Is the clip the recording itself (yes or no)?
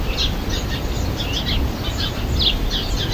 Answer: yes